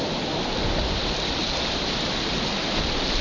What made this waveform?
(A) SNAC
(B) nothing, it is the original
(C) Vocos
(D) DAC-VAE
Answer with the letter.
B